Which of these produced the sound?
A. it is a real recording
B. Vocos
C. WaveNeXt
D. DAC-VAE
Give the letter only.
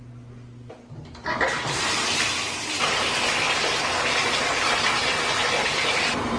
A